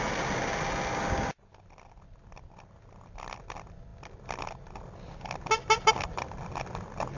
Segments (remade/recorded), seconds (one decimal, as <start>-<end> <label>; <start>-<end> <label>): 0.0-7.2 recorded